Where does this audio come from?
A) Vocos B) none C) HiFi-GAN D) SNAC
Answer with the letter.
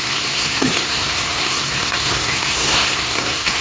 D